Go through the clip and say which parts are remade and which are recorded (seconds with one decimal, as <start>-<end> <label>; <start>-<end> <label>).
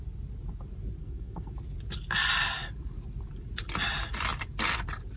0.0-1.0 recorded; 1.0-1.5 remade; 1.5-5.2 recorded